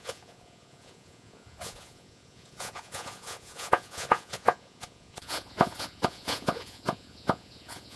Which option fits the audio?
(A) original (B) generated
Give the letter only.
B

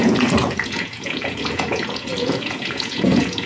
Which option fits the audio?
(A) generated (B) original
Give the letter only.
A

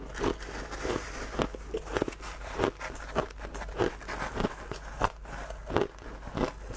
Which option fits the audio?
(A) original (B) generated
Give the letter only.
A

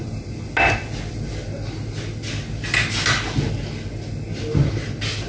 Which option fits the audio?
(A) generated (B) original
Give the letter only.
B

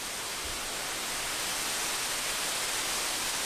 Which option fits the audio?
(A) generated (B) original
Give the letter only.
B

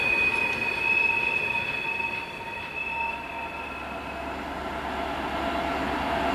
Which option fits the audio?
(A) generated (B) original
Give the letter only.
B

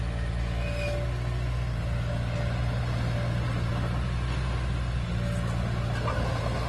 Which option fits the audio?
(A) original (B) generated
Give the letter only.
A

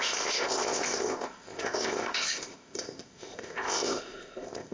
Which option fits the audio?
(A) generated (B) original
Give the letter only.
A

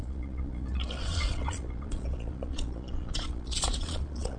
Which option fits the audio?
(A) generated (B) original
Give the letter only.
A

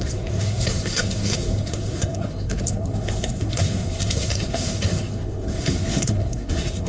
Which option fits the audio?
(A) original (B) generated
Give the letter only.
B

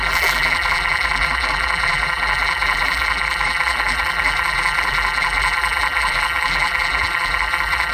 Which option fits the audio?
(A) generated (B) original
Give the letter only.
A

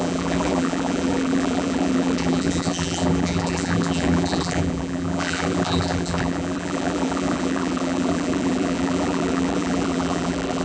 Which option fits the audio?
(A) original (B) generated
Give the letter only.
B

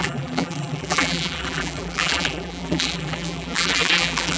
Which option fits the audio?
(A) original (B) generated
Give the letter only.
B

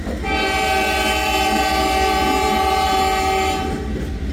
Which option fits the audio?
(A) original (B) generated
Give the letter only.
A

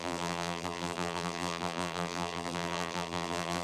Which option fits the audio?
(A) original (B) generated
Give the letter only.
B